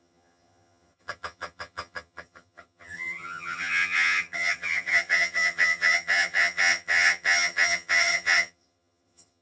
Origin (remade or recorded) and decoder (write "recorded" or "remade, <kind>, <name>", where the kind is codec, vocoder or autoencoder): remade, vocoder, HiFi-GAN